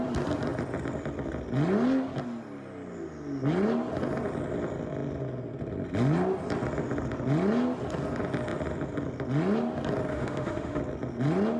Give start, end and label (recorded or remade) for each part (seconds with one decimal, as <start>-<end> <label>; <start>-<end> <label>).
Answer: 0.0-10.1 recorded; 10.1-10.8 remade; 10.8-11.6 recorded